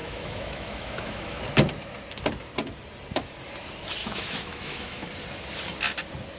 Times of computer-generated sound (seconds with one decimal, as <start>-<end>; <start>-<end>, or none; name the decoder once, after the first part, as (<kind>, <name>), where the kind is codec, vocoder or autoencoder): 0.0-1.4 (autoencoder, DAC-VAE); 4.0-5.1